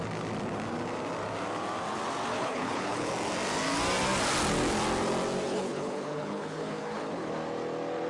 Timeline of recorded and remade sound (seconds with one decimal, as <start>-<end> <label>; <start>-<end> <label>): 0.0-2.3 recorded; 2.3-3.1 remade; 3.1-5.5 recorded; 5.5-7.3 remade; 7.3-8.1 recorded